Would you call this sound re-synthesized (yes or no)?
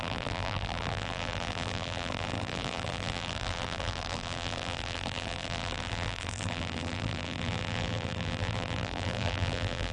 yes